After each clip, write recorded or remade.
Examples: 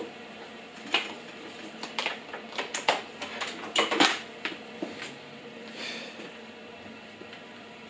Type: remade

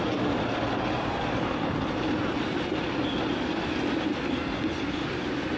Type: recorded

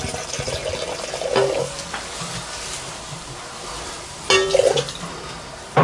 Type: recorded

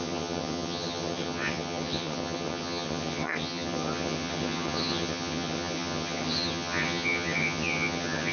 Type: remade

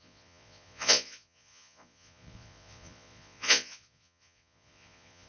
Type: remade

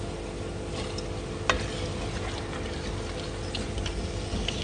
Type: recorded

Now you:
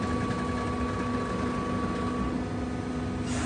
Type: recorded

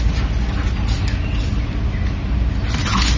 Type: recorded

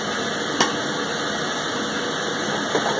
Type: recorded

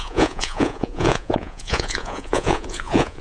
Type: remade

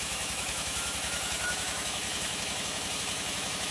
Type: remade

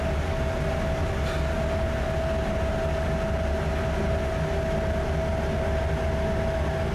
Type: recorded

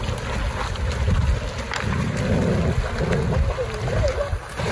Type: recorded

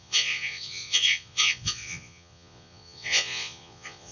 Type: remade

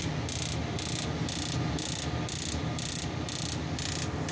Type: recorded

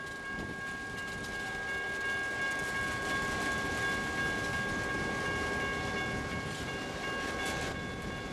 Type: recorded